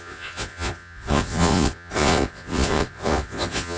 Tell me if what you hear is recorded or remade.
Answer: remade